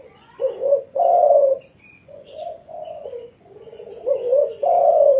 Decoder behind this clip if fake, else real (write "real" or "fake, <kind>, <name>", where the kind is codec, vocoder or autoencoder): fake, vocoder, Vocos